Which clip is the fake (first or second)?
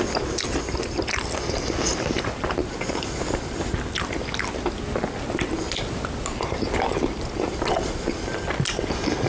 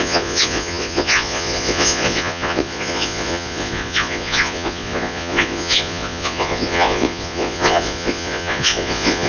second